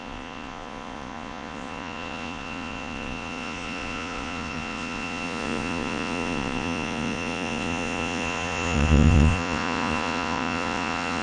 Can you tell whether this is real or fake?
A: fake